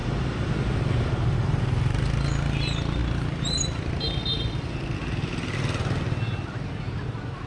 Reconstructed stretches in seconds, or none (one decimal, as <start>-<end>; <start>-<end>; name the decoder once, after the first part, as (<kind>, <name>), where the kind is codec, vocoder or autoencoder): none